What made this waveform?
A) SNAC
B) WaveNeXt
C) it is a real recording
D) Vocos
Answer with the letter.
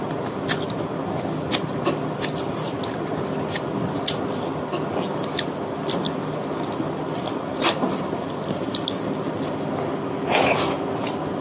C